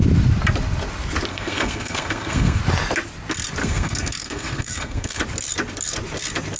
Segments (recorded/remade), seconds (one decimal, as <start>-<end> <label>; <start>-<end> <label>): 0.0-1.3 recorded; 1.3-2.6 remade; 2.6-3.6 recorded; 3.6-5.2 remade; 5.2-6.6 recorded